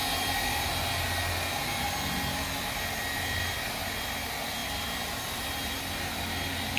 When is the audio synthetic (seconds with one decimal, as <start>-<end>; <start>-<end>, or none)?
none